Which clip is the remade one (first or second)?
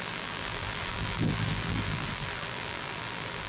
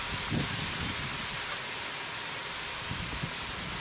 first